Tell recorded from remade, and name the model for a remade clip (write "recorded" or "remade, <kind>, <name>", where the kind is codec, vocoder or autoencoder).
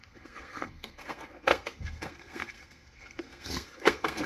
remade, codec, SNAC